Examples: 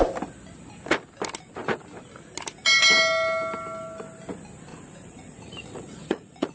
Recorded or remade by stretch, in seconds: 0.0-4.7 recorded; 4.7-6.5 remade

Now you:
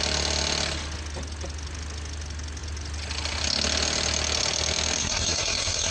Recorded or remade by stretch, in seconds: 0.0-5.0 recorded; 5.0-5.9 remade

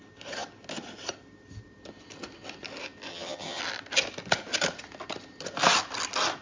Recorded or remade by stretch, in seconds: 0.0-3.1 recorded; 3.1-3.6 remade; 3.6-6.4 recorded

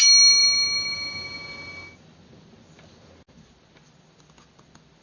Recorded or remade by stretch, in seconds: 0.0-5.0 recorded

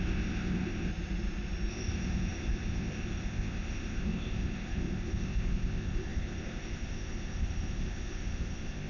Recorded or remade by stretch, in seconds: 0.0-0.9 remade; 0.9-1.7 recorded; 1.7-8.9 remade

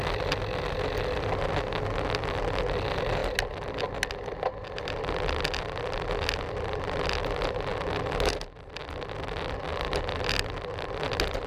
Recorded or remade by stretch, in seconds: 0.0-11.5 recorded